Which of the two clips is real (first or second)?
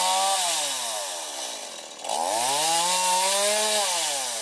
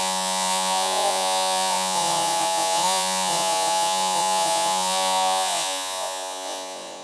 first